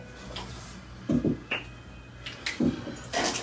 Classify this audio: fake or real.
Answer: real